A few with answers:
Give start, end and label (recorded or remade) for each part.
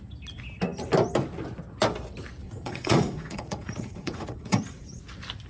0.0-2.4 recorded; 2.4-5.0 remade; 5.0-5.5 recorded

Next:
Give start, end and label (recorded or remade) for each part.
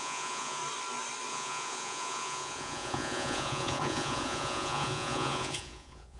0.0-0.6 remade; 0.6-1.3 recorded; 1.3-6.2 remade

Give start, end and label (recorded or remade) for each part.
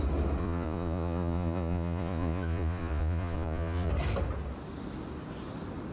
0.0-0.4 recorded; 0.4-3.9 remade; 3.9-5.9 recorded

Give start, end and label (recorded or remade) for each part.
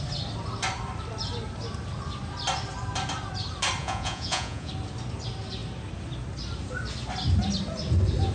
0.0-3.8 recorded; 3.8-4.7 remade; 4.7-8.3 recorded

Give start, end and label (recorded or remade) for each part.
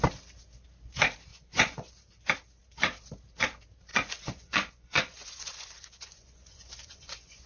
0.0-1.3 recorded; 1.3-1.9 remade; 1.9-3.9 recorded; 3.9-7.5 remade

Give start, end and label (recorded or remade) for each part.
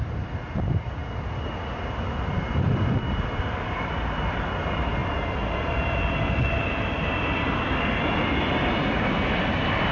0.0-9.9 recorded